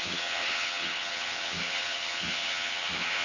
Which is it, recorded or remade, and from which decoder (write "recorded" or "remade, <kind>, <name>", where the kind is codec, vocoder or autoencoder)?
remade, vocoder, HiFi-GAN